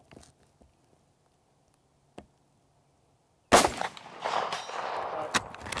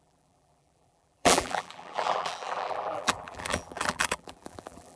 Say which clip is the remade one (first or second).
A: second